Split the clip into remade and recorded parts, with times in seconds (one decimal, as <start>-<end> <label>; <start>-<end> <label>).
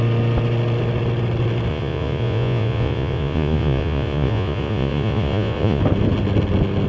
0.0-1.7 recorded; 1.7-5.8 remade; 5.8-6.9 recorded